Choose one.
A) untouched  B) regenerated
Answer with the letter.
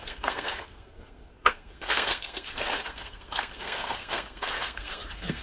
B